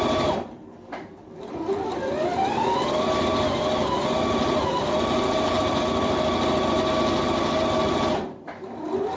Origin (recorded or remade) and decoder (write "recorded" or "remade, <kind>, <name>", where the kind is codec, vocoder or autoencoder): recorded